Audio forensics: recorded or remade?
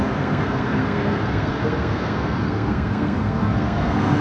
remade